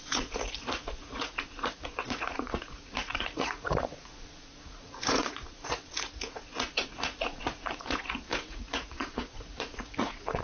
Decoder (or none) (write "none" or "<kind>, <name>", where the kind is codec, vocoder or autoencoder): vocoder, Vocos